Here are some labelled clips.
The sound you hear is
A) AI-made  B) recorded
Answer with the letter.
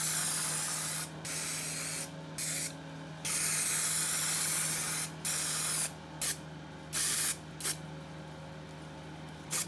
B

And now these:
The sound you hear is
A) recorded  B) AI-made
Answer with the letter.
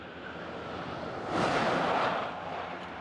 A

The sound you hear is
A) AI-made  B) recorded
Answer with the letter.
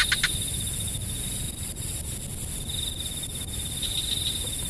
B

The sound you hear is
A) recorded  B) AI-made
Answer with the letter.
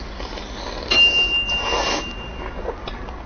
A